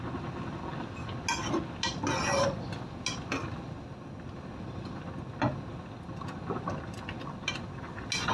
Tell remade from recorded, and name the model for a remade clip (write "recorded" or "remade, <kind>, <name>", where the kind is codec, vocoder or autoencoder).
recorded